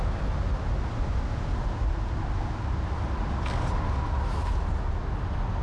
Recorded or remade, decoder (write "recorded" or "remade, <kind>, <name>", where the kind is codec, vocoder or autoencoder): recorded